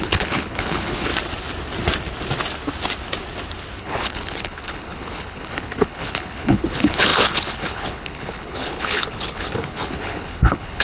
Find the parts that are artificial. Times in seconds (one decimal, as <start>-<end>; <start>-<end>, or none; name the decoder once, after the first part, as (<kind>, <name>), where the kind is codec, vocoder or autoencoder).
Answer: 0.0-1.1 (codec, HILCodec); 3.8-10.8